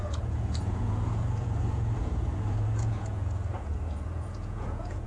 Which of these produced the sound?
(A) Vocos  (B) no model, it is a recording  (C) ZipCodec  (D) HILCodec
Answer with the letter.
A